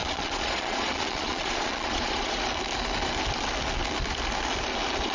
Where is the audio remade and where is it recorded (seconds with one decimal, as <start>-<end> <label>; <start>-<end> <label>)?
0.0-2.4 remade; 2.4-5.1 recorded